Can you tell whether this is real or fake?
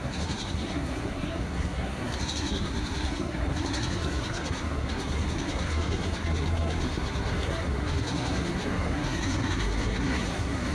fake